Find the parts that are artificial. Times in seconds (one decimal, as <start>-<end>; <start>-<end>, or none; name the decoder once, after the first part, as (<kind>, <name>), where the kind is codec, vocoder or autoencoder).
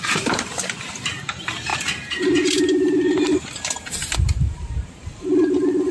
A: 0.0-0.5 (vocoder, BigVGAN v2); 1.1-5.9